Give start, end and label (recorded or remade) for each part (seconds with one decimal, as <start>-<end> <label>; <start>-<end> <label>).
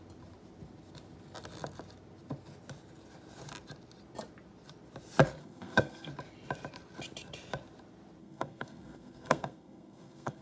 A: 0.0-5.4 recorded; 5.4-6.1 remade; 6.1-8.2 recorded; 8.2-10.4 remade